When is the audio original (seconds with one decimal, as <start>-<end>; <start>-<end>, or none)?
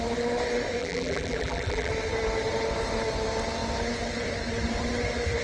0.0-0.8; 1.9-5.4